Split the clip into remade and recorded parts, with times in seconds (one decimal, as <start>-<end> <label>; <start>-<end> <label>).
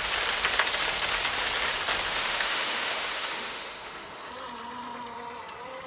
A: 0.0-2.1 recorded; 2.1-4.3 remade; 4.3-5.9 recorded